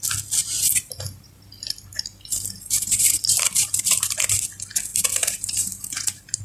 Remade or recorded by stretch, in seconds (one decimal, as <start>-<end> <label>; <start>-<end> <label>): 0.0-0.4 recorded; 0.4-1.4 remade; 1.4-1.9 recorded; 1.9-4.1 remade; 4.1-4.9 recorded; 4.9-6.4 remade